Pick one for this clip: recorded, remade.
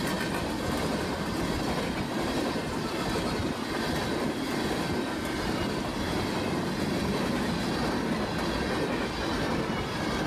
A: recorded